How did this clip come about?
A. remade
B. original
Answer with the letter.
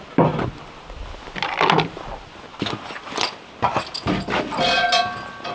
B